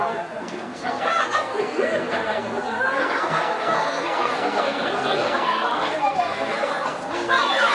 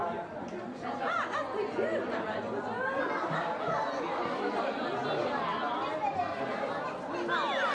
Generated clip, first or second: first